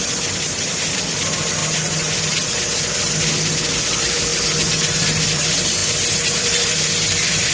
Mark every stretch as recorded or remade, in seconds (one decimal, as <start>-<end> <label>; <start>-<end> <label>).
0.0-1.6 remade; 1.6-3.8 recorded; 3.8-4.3 remade; 4.3-5.2 recorded; 5.2-5.8 remade; 5.8-6.4 recorded; 6.4-7.5 remade